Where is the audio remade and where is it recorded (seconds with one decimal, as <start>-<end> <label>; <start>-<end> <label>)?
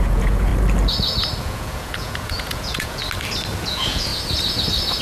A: 0.0-0.5 remade; 0.5-1.4 recorded; 1.4-3.0 remade; 3.0-3.6 recorded; 3.6-4.1 remade; 4.1-5.0 recorded